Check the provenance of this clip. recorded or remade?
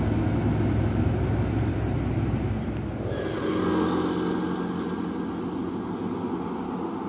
recorded